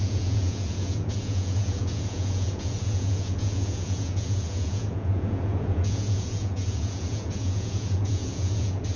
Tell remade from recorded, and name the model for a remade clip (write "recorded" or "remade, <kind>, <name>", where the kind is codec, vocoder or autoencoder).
remade, vocoder, Vocos